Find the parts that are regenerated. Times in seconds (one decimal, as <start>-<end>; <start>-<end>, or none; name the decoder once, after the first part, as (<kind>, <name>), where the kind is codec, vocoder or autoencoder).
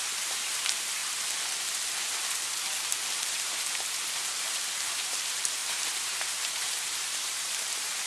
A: 0.0-1.0 (vocoder, BigVGAN v2); 3.3-8.1